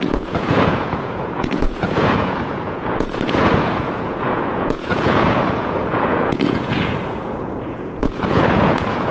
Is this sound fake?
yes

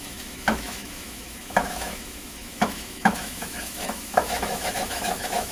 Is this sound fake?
yes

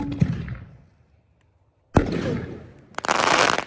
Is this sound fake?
no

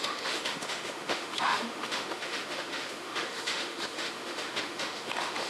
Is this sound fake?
yes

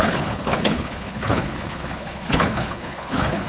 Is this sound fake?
yes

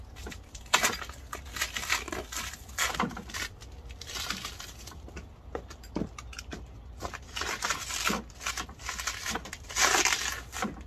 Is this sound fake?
no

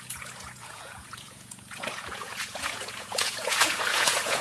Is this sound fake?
yes